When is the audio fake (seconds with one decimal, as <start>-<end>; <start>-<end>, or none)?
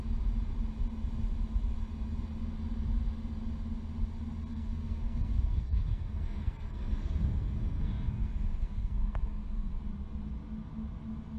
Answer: 4.5-9.7